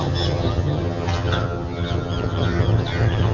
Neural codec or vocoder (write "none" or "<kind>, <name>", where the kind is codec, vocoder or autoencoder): vocoder, HiFi-GAN